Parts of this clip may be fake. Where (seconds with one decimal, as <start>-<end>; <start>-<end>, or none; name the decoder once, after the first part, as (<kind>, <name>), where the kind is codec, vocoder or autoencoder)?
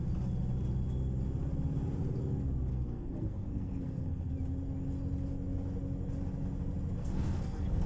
2.7-4.3 (codec, SNAC); 7.0-7.9